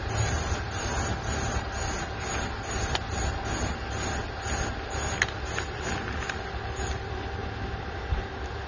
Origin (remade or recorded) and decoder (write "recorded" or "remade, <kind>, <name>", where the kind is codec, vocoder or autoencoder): recorded